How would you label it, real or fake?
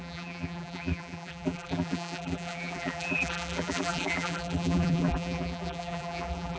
fake